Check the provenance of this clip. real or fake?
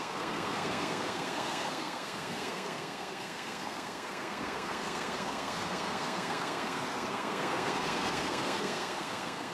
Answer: fake